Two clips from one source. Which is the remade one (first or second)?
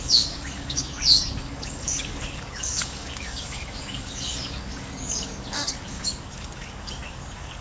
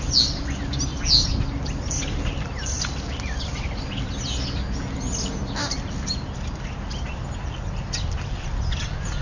first